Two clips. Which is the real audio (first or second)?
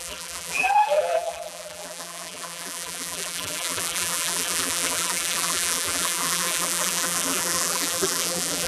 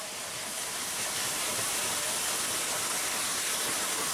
second